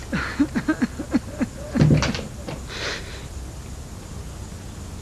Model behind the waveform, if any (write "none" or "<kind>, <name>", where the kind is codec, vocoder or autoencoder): none